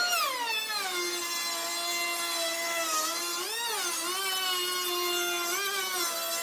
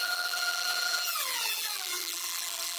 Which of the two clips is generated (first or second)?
second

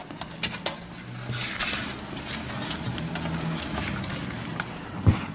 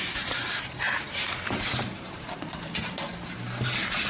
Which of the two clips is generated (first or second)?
second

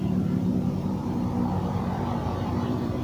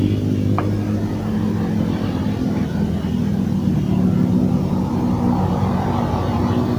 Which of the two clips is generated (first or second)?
first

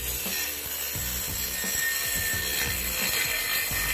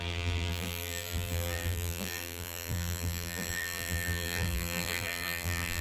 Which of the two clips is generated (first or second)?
second